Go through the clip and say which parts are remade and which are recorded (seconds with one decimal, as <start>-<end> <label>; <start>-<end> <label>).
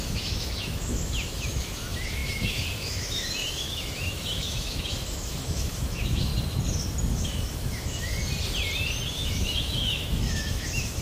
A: 0.0-6.3 remade; 6.3-7.1 recorded; 7.1-8.1 remade; 8.1-9.1 recorded; 9.1-11.0 remade